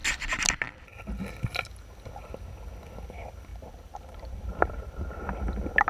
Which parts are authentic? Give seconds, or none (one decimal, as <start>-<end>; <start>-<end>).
0.0-3.5; 5.2-5.9